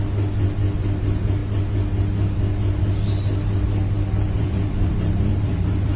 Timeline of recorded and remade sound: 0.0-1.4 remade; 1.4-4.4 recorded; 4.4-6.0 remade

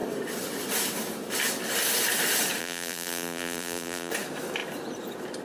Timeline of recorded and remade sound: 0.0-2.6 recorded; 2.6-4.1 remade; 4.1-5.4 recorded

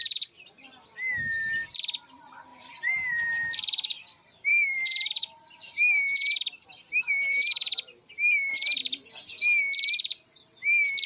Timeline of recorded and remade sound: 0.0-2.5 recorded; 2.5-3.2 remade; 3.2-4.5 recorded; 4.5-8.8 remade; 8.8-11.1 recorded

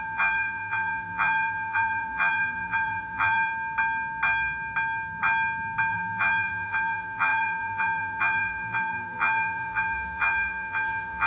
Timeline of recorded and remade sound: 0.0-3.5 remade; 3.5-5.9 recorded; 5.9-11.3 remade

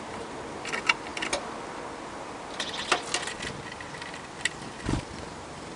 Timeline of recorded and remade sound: 0.0-1.1 remade; 1.1-4.6 recorded; 4.6-5.8 remade

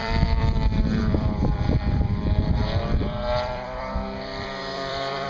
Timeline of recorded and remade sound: 0.0-5.3 remade